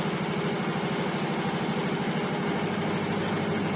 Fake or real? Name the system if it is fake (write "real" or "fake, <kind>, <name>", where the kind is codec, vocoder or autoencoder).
real